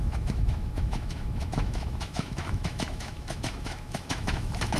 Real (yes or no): no